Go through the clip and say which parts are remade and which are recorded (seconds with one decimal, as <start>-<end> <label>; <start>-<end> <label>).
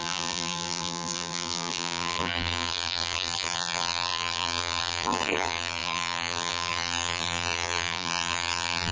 0.0-8.9 remade